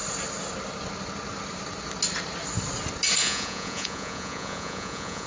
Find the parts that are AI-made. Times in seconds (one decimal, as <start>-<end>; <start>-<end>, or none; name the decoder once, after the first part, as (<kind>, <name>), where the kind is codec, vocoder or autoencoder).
3.2-5.3 (vocoder, Vocos)